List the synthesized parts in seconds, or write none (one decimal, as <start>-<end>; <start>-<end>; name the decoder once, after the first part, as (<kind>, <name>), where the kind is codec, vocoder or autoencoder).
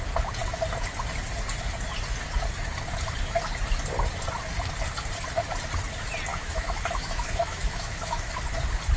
6.3-8.4 (autoencoder, DAC-VAE)